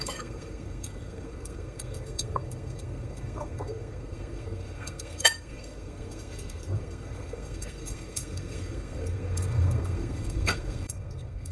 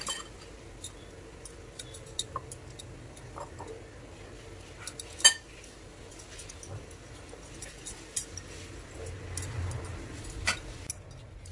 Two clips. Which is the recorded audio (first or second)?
second